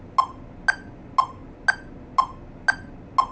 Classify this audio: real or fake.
real